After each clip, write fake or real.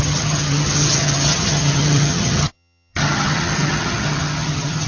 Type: fake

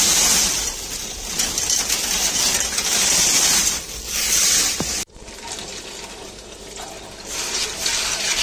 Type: real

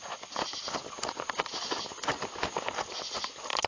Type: real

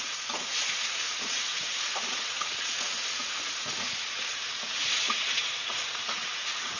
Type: fake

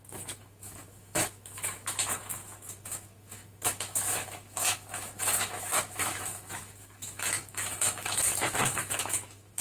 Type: fake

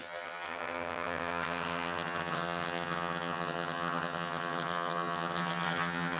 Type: fake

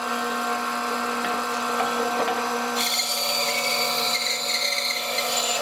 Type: real